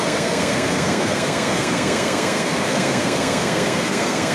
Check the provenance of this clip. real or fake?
fake